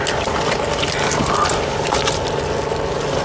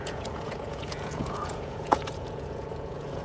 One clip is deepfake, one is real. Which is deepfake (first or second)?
second